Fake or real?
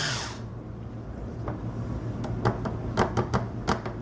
real